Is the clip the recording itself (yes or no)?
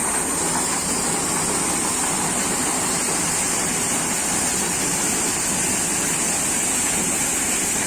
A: yes